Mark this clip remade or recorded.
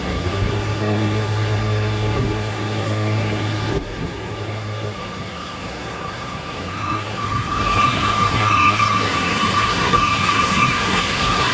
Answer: remade